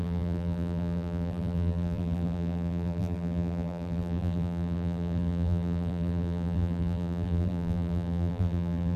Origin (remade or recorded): remade